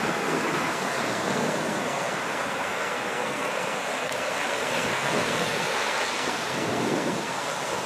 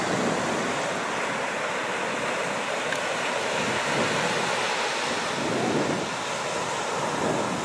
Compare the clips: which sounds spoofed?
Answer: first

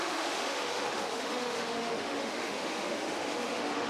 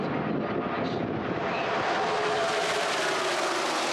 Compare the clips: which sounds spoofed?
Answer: first